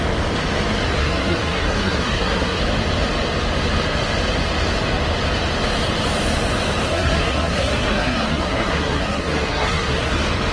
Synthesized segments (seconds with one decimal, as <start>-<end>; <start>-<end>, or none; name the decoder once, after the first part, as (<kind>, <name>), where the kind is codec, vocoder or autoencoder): 1.0-2.6 (codec, SNAC); 6.9-10.1